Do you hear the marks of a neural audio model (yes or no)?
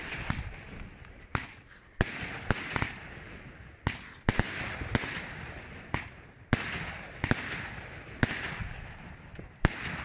no